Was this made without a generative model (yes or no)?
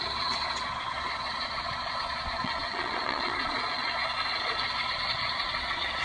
no